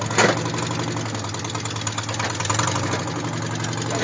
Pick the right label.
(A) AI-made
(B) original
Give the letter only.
B